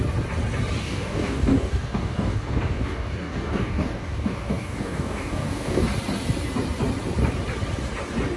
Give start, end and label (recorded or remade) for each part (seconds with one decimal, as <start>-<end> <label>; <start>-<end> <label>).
0.0-0.8 recorded; 0.8-5.8 remade; 5.8-8.4 recorded